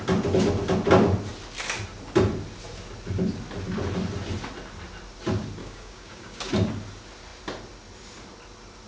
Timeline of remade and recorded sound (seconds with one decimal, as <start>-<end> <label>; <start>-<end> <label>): 0.0-5.6 recorded; 5.6-6.5 remade; 6.5-8.9 recorded